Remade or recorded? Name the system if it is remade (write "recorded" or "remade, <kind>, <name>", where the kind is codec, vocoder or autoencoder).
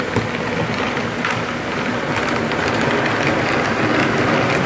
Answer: recorded